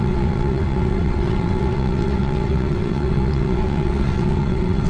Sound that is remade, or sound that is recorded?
remade